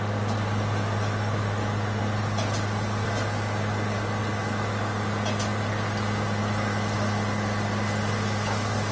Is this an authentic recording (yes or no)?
yes